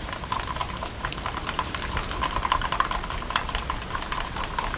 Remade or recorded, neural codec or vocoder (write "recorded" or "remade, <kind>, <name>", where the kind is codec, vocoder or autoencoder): recorded